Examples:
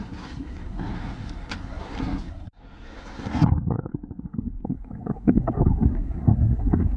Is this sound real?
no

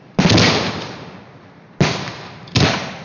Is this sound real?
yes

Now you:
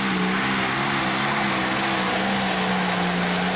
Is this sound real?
yes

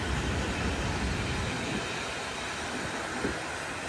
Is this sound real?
yes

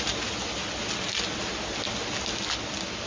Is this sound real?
yes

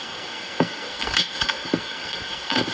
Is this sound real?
no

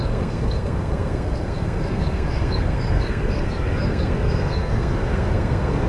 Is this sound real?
no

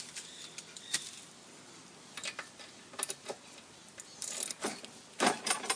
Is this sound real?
yes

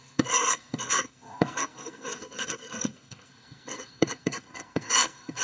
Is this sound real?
no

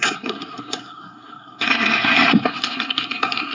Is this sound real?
no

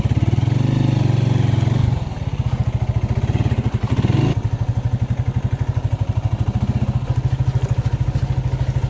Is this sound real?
yes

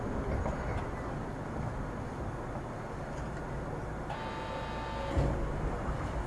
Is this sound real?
yes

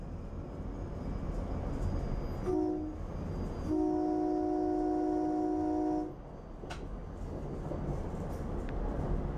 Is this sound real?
yes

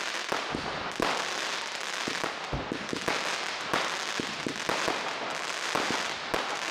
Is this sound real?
yes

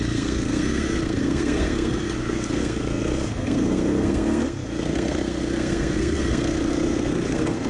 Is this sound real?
no